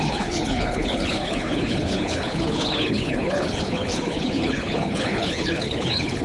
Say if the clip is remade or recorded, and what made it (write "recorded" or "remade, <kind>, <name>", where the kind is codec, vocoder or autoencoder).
remade, codec, HILCodec